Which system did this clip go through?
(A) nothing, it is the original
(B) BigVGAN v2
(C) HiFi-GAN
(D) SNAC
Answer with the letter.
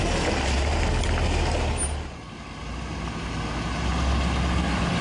A